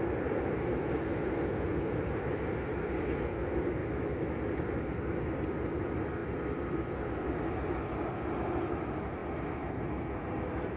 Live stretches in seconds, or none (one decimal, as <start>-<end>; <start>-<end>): 0.0-3.8; 4.4-10.8

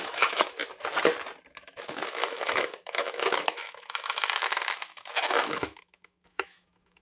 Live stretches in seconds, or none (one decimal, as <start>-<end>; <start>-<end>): 0.6-1.5

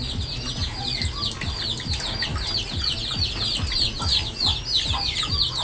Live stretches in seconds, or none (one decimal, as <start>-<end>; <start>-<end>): 0.0-5.6